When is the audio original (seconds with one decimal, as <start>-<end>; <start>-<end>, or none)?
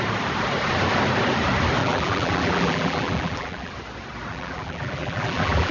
0.0-1.8; 3.7-4.3